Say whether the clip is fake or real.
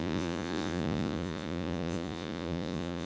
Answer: fake